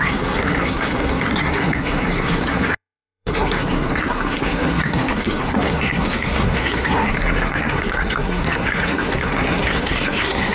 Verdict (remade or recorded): remade